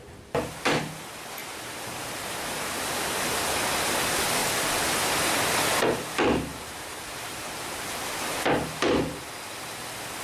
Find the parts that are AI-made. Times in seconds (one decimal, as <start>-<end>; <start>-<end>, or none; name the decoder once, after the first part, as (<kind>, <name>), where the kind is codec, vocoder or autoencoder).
1.4-2.8 (vocoder, BigVGAN v2); 6.5-7.8